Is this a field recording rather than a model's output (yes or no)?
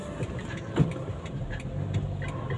yes